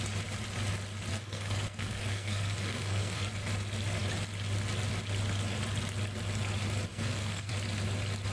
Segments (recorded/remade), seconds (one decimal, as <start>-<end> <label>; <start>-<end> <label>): 0.0-1.1 recorded; 1.1-3.3 remade; 3.3-6.9 recorded; 6.9-7.5 remade; 7.5-8.3 recorded